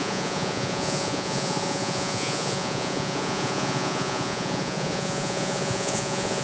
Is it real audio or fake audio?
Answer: fake